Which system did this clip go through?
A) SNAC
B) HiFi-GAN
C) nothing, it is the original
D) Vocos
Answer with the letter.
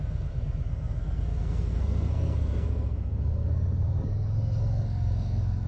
A